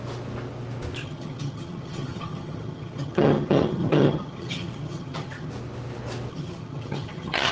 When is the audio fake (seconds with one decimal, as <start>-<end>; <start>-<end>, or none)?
1.0-5.5; 6.3-7.5